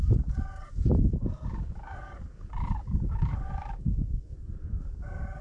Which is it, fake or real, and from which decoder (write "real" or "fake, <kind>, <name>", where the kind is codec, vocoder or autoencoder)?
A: fake, codec, DAC